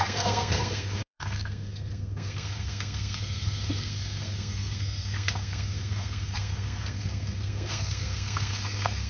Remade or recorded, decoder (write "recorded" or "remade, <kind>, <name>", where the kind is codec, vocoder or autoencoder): remade, codec, SNAC